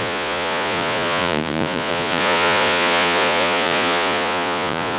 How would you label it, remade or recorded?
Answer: remade